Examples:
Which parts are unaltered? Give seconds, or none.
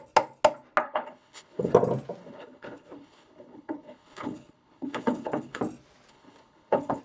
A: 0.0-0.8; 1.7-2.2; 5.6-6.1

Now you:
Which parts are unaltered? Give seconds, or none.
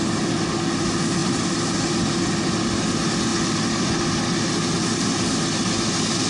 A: 0.0-6.3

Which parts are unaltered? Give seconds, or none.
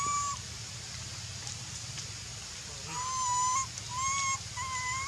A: 0.0-5.1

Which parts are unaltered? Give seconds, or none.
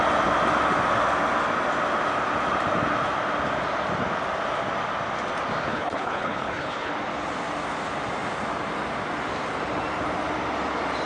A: 0.0-5.7; 6.9-11.1